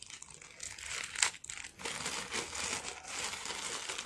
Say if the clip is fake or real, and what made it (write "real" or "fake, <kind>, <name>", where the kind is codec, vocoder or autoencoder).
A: real